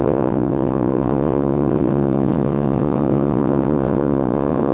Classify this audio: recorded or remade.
remade